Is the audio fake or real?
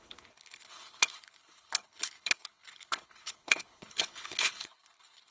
fake